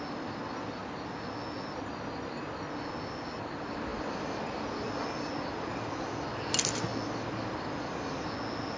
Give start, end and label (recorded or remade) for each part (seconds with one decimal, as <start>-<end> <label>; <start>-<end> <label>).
0.0-8.8 recorded